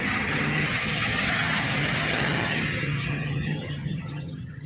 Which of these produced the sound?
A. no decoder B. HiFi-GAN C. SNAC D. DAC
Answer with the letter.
B